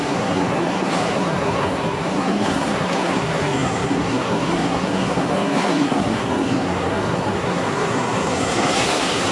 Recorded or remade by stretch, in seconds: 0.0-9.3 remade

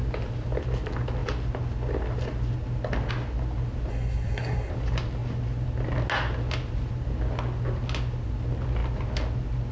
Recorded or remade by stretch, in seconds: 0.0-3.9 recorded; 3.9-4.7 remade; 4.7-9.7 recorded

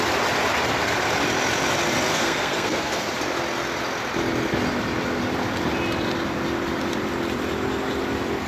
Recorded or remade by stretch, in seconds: 0.0-2.1 recorded; 2.1-3.1 remade; 3.1-8.5 recorded

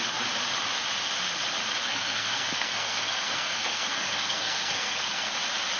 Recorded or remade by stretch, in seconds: 0.0-1.8 recorded; 1.8-5.3 remade; 5.3-5.8 recorded